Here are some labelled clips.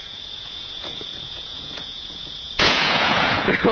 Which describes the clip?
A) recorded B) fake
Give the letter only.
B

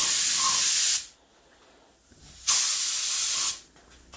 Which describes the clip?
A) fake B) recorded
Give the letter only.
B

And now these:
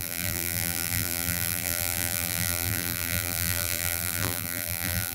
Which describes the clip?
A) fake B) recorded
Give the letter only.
A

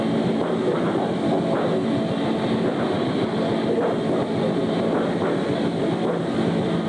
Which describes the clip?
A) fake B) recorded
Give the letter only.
B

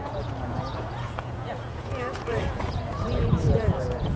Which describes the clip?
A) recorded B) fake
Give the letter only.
B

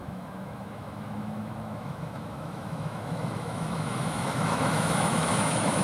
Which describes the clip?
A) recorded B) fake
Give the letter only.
B